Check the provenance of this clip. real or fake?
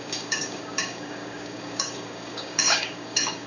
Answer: fake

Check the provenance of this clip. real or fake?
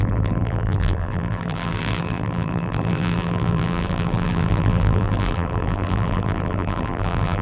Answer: fake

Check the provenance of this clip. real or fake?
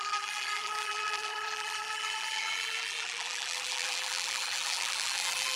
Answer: fake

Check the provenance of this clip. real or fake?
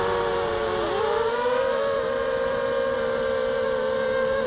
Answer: fake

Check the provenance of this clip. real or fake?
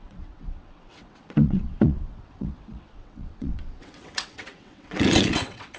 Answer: fake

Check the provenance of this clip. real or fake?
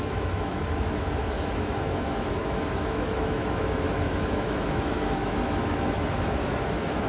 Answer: fake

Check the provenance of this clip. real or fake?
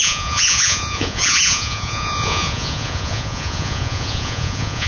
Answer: fake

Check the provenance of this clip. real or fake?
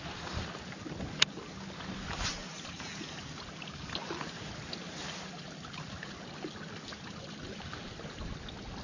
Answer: real